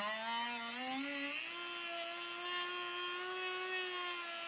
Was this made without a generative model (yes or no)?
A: yes